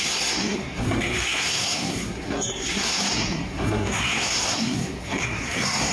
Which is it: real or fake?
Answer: fake